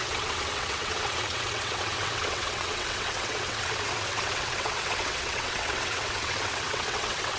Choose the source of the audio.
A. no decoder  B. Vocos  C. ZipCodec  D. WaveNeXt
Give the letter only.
D